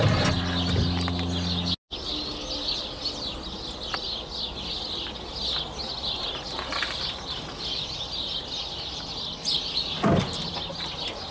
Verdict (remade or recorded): recorded